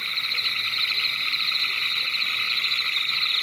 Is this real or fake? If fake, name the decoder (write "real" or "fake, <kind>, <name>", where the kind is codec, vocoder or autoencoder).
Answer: real